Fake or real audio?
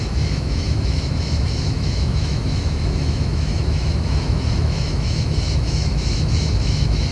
fake